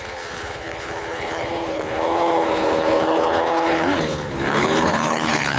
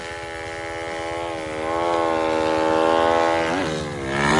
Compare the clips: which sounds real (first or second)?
second